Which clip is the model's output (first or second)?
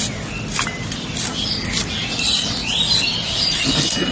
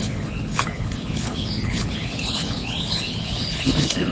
second